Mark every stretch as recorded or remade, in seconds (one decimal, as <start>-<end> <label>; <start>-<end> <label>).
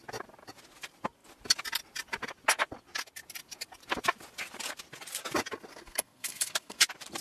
0.0-5.7 recorded; 5.7-6.8 remade; 6.8-7.2 recorded